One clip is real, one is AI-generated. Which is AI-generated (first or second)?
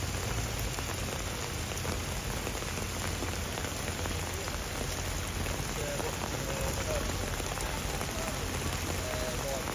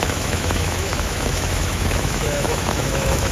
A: second